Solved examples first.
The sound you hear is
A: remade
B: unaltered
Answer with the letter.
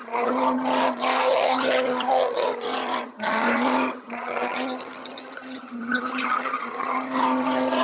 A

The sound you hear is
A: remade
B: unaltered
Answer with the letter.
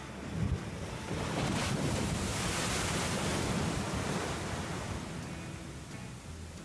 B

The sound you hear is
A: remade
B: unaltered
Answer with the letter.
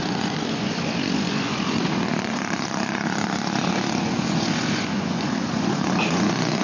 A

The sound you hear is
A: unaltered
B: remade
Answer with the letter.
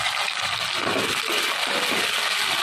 A